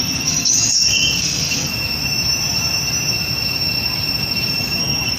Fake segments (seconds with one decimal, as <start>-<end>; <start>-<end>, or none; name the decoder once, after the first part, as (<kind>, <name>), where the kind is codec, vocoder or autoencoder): 0.0-1.7 (codec, SNAC); 4.8-5.2